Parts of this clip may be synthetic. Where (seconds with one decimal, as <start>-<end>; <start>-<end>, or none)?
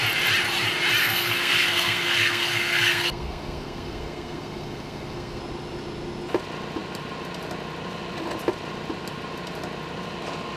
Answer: 1.0-5.4